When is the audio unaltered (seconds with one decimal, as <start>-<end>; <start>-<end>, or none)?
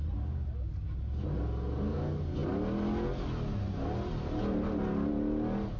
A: 0.0-5.8